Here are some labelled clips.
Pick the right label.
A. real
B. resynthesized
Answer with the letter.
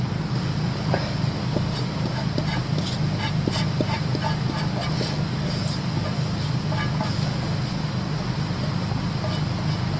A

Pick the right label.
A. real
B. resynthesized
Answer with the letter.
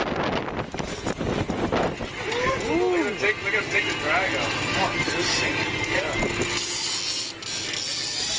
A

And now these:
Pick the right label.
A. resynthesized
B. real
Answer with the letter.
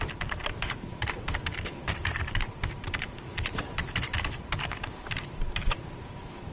A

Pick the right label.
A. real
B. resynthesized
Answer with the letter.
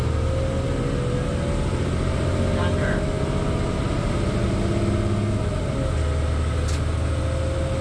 A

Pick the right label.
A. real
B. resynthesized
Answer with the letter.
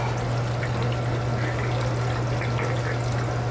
A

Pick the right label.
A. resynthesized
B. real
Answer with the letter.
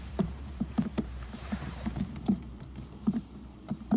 A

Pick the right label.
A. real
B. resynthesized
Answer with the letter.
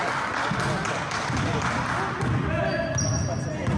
A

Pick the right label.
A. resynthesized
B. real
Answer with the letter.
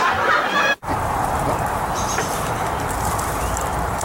A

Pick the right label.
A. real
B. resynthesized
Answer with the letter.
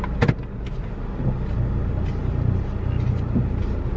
A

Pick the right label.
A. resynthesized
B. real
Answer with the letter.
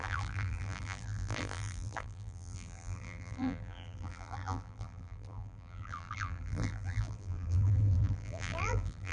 A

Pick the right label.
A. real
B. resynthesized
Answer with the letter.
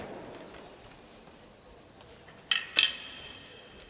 A